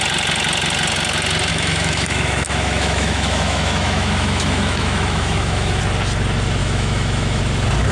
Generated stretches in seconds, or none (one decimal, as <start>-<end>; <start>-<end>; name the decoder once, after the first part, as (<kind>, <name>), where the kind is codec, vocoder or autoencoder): 1.5-5.8 (autoencoder, DAC-VAE); 6.6-7.4

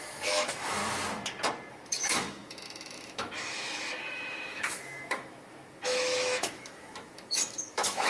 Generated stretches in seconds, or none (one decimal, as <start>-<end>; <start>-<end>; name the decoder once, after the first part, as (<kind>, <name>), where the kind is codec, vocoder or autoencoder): 0.0-0.8 (autoencoder, DAC-VAE); 1.7-8.1